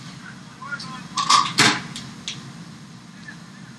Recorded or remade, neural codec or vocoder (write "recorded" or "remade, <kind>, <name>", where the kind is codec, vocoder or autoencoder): recorded